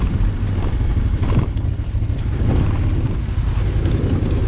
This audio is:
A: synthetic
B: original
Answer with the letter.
B